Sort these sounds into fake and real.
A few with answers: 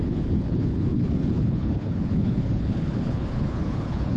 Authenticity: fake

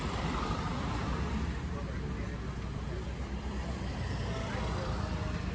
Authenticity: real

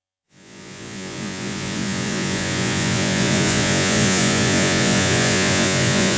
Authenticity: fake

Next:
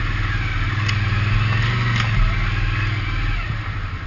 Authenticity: real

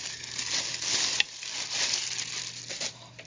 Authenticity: real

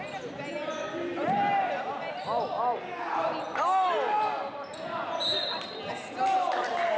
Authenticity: real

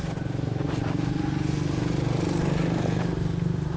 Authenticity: real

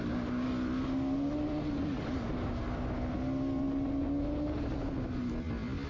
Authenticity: real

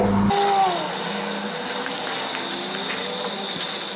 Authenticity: real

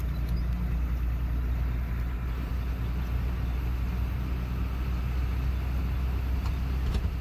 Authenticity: real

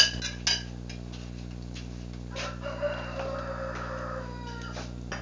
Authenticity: real